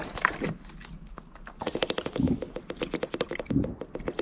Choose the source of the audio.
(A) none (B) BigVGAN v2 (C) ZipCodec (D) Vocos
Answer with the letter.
A